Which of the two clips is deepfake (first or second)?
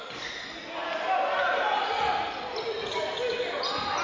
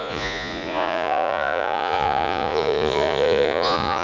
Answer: second